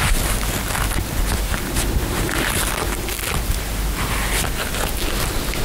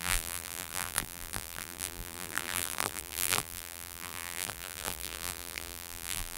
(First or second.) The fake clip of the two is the second